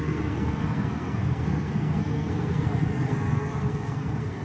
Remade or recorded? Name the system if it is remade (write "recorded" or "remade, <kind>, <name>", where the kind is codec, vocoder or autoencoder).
remade, codec, SNAC